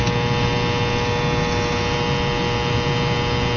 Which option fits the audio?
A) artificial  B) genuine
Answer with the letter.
B